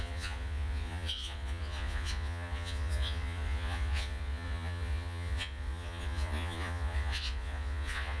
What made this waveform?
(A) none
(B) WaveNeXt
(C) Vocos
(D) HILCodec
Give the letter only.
C